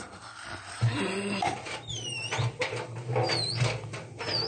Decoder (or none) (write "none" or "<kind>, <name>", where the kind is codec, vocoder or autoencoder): none